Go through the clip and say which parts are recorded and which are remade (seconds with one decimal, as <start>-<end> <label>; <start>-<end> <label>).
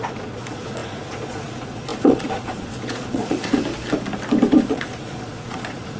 0.0-3.5 remade; 3.5-4.7 recorded; 4.7-6.0 remade